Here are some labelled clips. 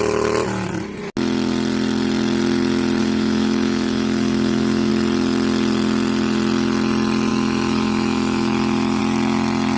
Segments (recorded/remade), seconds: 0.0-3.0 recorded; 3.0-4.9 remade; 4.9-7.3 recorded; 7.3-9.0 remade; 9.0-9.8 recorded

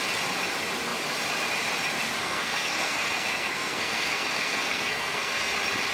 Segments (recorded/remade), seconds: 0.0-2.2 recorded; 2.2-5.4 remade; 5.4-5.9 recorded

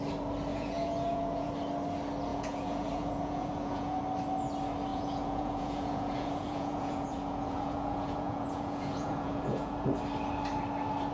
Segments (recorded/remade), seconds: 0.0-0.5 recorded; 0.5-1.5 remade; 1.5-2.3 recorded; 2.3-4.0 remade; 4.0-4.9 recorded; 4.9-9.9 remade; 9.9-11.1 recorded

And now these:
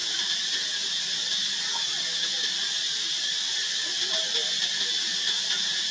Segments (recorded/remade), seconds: 0.0-5.9 recorded

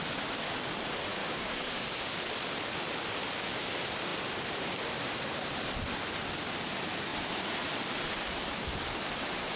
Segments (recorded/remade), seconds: 0.0-1.2 recorded; 1.2-2.1 remade; 2.1-9.6 recorded

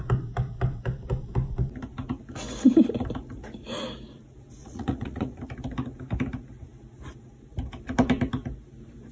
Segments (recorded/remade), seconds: 0.0-4.6 recorded; 4.6-5.4 remade; 5.4-9.1 recorded